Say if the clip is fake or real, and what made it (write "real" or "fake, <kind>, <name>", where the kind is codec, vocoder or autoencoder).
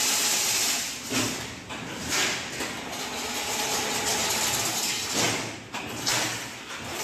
real